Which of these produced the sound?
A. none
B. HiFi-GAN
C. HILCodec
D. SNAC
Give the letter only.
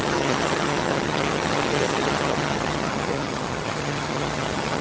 B